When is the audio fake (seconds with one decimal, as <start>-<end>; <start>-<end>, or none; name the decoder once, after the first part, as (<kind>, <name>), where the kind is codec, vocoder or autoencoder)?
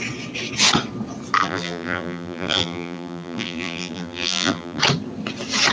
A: 1.4-4.8 (vocoder, BigVGAN v2)